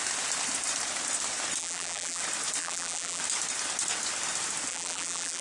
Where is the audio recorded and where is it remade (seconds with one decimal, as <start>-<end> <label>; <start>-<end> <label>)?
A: 0.0-1.6 recorded; 1.6-2.2 remade; 2.2-2.6 recorded; 2.6-3.2 remade; 3.2-4.7 recorded; 4.7-5.4 remade

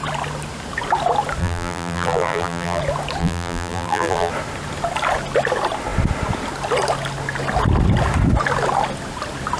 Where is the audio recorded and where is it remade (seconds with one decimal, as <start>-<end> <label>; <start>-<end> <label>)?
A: 0.0-1.4 recorded; 1.4-2.8 remade; 2.8-3.2 recorded; 3.2-4.3 remade; 4.3-9.6 recorded

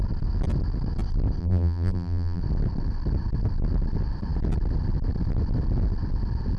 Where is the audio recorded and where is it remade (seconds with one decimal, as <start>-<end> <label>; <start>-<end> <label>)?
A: 0.0-1.4 recorded; 1.4-2.4 remade; 2.4-6.6 recorded

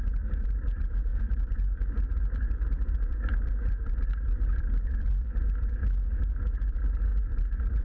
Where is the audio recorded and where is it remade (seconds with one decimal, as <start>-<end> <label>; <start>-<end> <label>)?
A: 0.0-1.1 recorded; 1.1-5.7 remade; 5.7-7.1 recorded; 7.1-7.8 remade

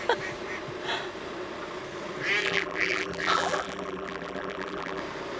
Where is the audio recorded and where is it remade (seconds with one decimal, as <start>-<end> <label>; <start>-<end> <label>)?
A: 0.0-2.4 recorded; 2.4-5.0 remade; 5.0-5.4 recorded